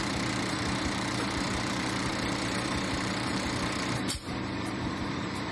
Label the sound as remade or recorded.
remade